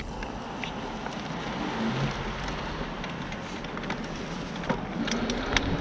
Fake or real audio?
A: real